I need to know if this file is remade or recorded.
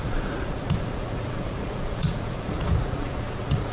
remade